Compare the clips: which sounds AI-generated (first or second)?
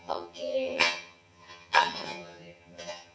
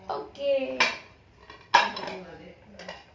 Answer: first